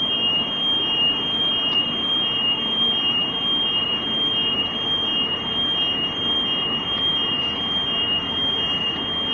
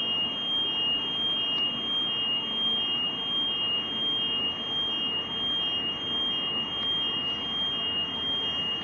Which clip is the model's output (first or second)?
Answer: first